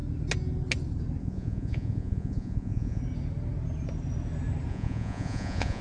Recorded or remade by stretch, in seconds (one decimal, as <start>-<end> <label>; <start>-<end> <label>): 0.0-1.2 recorded; 1.2-3.0 remade; 3.0-4.7 recorded; 4.7-5.8 remade